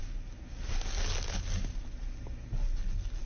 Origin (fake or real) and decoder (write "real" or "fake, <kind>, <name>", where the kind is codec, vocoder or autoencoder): real